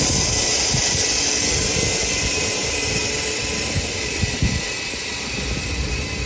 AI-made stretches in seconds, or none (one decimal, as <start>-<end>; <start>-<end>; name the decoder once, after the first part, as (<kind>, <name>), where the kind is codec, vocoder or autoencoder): none